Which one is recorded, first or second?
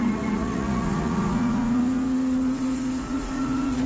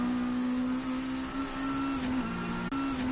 second